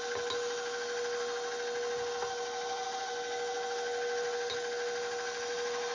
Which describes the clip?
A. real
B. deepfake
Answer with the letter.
A